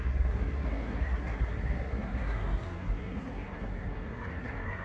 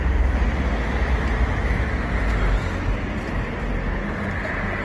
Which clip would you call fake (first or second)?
first